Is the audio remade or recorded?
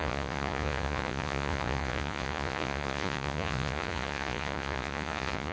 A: remade